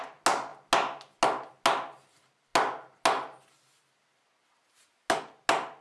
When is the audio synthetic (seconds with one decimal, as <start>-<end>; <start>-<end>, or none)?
none